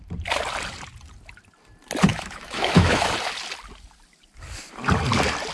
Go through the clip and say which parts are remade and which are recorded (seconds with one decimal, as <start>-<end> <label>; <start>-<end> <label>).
0.0-2.1 recorded; 2.1-3.1 remade; 3.1-5.5 recorded